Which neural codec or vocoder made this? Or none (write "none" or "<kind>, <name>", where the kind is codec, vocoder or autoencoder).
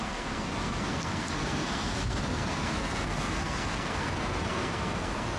codec, SNAC